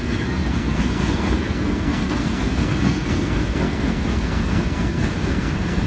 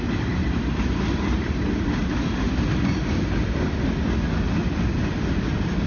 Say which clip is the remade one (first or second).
first